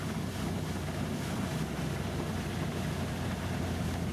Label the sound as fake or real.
real